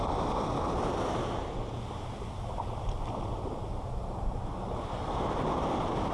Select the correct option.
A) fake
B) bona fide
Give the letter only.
B